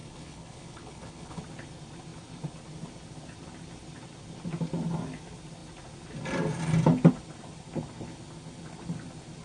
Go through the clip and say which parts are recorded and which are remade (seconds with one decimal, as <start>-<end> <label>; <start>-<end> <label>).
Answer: 0.0-1.4 remade; 1.4-9.4 recorded